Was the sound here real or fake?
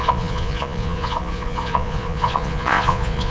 fake